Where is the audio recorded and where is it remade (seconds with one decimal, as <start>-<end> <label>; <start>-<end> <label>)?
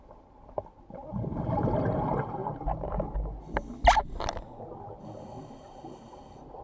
0.0-6.6 recorded